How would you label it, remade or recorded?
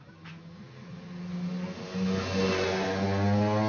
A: recorded